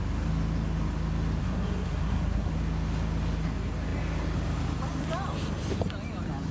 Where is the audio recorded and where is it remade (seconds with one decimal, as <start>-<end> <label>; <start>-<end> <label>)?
0.0-1.4 recorded; 1.4-2.5 remade; 2.5-6.5 recorded